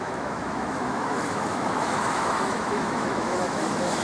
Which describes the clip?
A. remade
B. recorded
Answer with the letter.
A